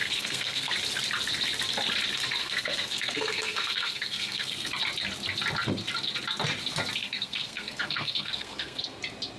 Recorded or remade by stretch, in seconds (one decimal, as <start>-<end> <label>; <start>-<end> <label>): 0.0-0.7 remade; 0.7-2.4 recorded; 2.4-4.7 remade; 4.7-7.0 recorded; 7.0-9.0 remade; 9.0-9.4 recorded